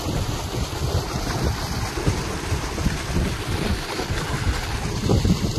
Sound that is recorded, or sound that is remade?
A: recorded